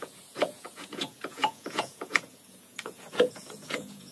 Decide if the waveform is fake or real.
fake